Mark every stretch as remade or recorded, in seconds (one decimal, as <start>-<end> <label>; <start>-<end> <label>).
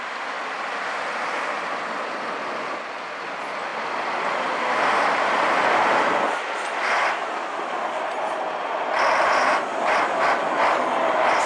0.0-11.5 recorded